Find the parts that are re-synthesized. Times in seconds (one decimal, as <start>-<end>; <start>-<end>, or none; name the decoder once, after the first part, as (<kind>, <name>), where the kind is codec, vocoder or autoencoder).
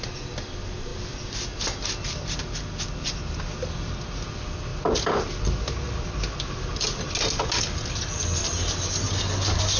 none